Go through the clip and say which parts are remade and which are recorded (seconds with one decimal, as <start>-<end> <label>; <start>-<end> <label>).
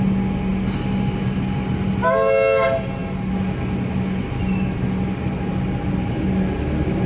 0.0-7.1 recorded